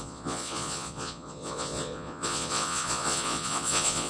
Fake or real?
fake